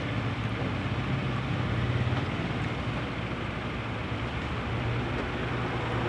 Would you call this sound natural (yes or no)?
yes